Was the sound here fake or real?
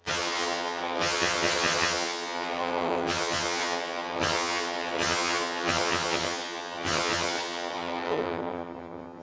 fake